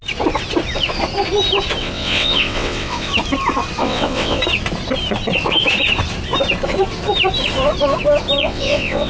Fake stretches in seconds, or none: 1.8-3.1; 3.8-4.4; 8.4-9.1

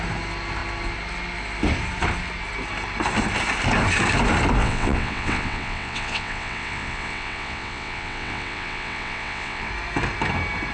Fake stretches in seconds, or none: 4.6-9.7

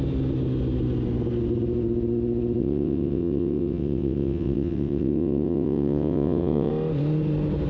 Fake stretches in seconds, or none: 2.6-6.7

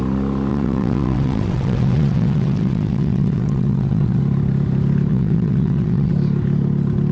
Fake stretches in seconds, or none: 0.5-4.2; 5.1-6.1